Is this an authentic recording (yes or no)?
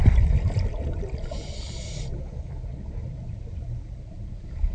no